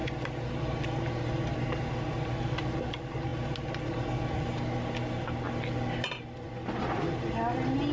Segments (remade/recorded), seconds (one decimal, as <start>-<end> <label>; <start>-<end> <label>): 0.0-7.9 recorded